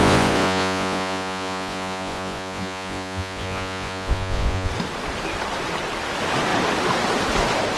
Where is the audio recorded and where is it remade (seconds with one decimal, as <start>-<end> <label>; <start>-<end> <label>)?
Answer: 0.0-4.7 remade; 4.7-7.8 recorded